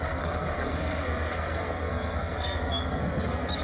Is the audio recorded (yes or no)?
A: no